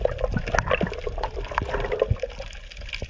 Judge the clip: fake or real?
real